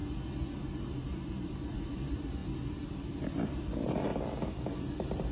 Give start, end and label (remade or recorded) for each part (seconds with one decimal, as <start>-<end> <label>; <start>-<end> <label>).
0.0-0.8 recorded; 0.8-2.4 remade; 2.4-2.9 recorded; 2.9-4.1 remade; 4.1-5.3 recorded

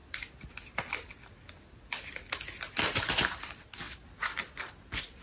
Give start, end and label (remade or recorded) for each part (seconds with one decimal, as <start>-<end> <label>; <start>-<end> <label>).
0.0-5.2 recorded

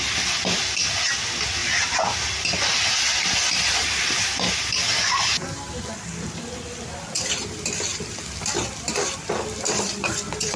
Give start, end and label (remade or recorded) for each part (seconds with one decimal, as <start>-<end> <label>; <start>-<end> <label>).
0.0-7.9 recorded; 7.9-10.6 remade

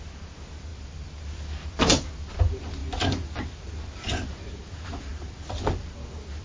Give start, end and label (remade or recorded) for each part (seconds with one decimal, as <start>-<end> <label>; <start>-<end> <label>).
0.0-6.4 recorded